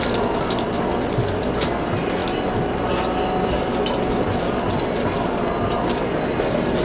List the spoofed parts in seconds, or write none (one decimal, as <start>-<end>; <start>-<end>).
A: none